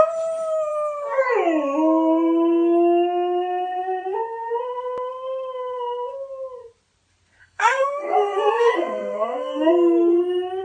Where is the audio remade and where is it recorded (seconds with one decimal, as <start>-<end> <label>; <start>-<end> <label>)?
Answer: 0.0-7.4 recorded; 7.4-9.7 remade; 9.7-10.6 recorded